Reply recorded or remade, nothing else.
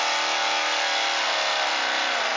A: recorded